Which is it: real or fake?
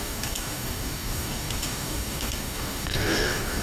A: fake